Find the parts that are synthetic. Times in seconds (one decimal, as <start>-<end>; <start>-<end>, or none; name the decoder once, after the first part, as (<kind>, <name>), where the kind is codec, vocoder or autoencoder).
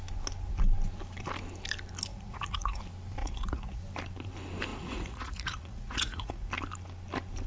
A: 2.1-2.8 (vocoder, Vocos); 3.2-3.8; 4.7-6.5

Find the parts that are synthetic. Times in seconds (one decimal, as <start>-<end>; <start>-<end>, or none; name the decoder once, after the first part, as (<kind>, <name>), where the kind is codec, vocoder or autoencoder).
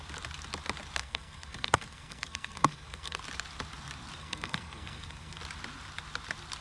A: 1.0-3.2 (codec, SNAC); 4.2-5.4